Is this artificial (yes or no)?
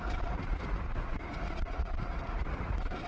yes